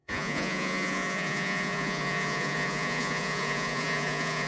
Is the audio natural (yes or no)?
no